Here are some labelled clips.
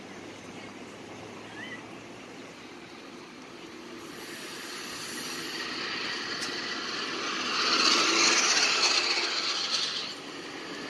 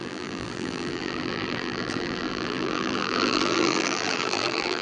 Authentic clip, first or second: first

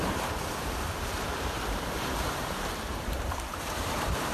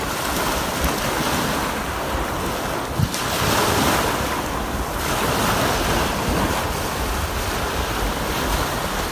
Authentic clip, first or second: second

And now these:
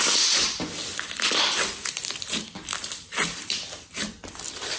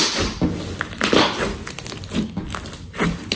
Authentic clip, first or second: second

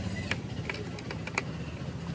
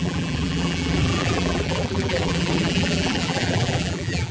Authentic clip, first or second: first